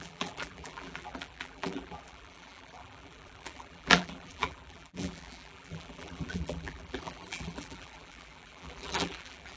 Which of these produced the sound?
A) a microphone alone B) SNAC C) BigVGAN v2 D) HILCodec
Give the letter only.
C